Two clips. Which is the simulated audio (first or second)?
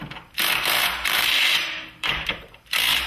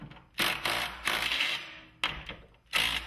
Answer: first